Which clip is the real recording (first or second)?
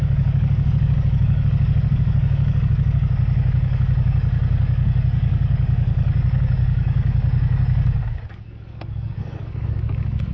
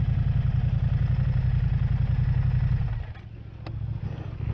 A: second